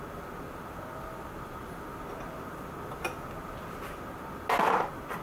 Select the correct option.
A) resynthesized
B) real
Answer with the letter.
B